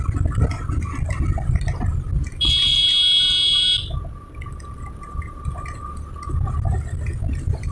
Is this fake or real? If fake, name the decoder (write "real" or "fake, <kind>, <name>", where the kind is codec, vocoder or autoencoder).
real